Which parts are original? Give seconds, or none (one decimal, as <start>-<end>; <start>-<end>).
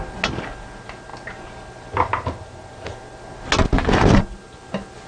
0.0-5.1